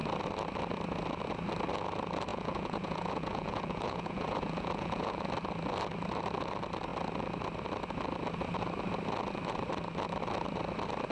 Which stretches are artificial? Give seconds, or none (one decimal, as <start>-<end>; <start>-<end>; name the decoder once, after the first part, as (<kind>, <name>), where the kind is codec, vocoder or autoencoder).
2.3-5.3 (vocoder, Vocos)